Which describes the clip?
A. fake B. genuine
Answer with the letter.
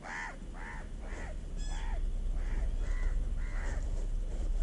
B